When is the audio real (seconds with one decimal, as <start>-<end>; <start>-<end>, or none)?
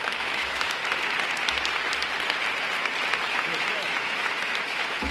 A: 0.8-3.3